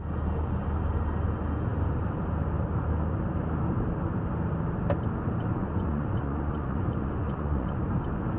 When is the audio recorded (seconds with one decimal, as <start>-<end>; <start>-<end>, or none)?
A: 0.0-5.6; 7.8-8.4

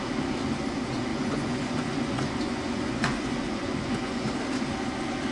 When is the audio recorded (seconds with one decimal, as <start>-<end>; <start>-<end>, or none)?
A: 0.0-1.1; 4.3-5.3

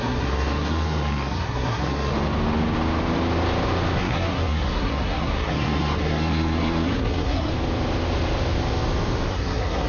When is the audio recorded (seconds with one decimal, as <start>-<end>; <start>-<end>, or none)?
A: 2.1-4.0; 7.5-9.3

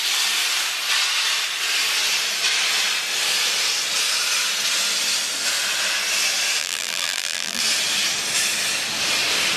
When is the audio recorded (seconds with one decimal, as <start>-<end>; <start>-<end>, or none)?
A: 0.0-6.6; 7.6-9.6

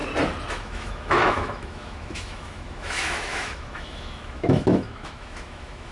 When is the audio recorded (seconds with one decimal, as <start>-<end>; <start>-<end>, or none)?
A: 0.0-0.5

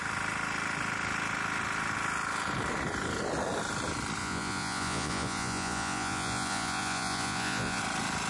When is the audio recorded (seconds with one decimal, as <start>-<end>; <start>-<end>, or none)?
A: 0.0-4.2; 7.8-8.3